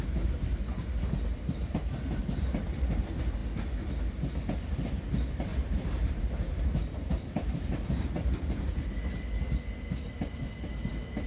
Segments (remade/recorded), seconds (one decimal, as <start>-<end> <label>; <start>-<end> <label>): 0.0-5.5 recorded; 5.5-8.3 remade; 8.3-11.3 recorded